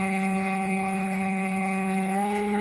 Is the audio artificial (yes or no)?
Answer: yes